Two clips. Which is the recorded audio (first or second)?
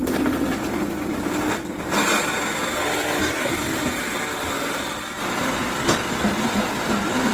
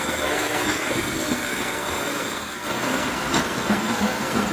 first